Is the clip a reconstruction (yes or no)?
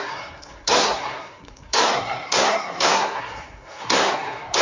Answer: yes